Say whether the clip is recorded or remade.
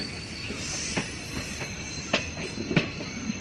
recorded